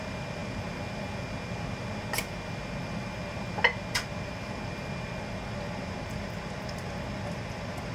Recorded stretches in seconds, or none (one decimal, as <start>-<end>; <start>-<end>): 0.0-7.9